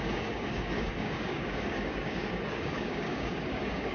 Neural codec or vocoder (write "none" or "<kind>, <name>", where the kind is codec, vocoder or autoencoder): codec, DAC